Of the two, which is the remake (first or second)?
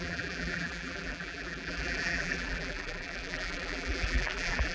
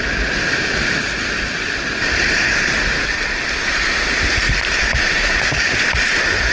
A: first